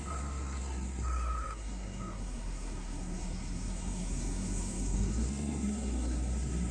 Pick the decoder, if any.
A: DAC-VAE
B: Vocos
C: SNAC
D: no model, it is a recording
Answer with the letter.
C